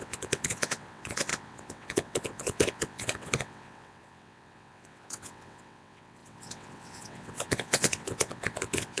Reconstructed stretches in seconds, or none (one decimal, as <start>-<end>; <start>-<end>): 0.0-9.0